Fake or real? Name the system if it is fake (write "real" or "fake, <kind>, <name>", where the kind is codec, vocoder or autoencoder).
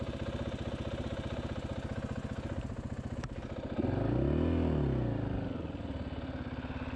real